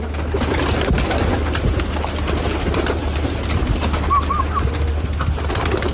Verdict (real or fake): real